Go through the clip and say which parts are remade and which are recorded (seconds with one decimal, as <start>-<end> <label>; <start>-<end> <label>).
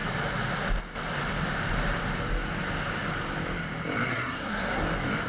0.0-4.1 recorded; 4.1-4.8 remade; 4.8-5.3 recorded